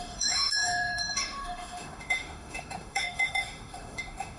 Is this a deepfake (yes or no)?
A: yes